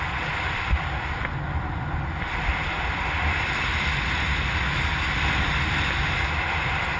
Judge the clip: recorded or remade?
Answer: recorded